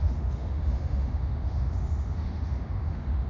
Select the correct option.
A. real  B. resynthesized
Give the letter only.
B